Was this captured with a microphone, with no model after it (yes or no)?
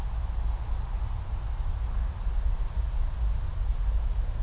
yes